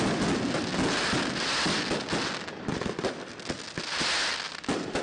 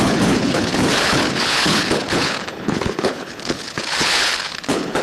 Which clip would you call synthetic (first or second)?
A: second